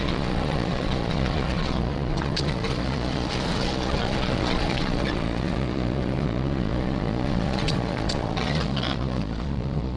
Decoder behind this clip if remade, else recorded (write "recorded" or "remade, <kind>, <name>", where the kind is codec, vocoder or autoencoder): remade, vocoder, Vocos